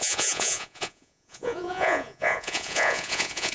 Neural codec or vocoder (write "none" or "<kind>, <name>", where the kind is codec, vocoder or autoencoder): vocoder, Vocos